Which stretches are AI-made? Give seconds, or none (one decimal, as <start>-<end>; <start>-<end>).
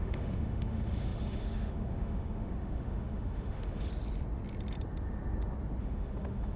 0.0-3.9; 5.8-6.6